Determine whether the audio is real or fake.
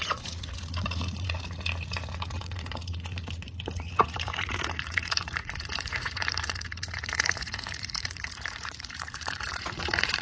fake